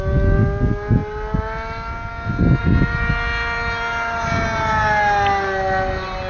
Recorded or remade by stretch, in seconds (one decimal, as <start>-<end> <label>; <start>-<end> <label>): 0.0-6.3 recorded